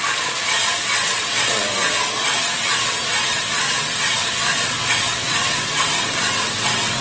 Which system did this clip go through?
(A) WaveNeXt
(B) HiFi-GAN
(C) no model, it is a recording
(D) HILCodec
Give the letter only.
A